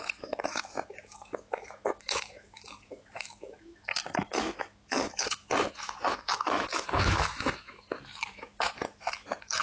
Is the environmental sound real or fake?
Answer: fake